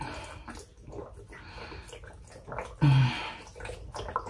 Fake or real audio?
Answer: real